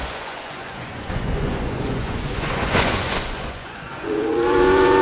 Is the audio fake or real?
fake